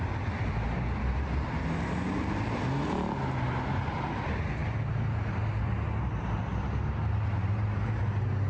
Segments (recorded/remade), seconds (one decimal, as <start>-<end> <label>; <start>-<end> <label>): 0.0-8.5 recorded